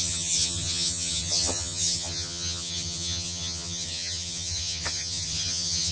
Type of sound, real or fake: fake